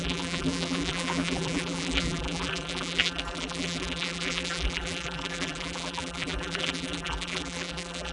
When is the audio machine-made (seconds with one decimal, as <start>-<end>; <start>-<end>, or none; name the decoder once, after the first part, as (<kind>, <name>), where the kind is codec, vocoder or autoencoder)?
0.0-8.1 (vocoder, BigVGAN v2)